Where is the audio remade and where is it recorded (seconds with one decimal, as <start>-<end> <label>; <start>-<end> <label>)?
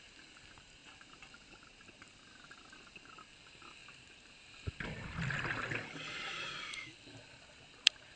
0.0-0.8 recorded; 0.8-2.9 remade; 2.9-3.8 recorded; 3.8-4.6 remade; 4.6-8.2 recorded